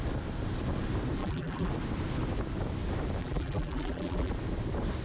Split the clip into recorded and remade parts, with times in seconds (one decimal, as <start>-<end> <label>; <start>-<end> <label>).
0.0-1.2 recorded; 1.2-1.7 remade; 1.7-3.2 recorded; 3.2-4.3 remade; 4.3-5.0 recorded